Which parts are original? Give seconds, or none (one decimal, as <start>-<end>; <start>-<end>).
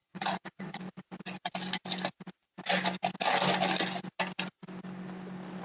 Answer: 0.8-5.6